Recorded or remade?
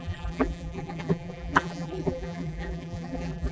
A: remade